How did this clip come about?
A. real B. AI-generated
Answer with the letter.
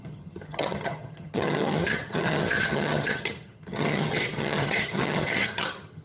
B